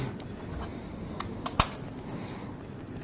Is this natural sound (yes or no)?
yes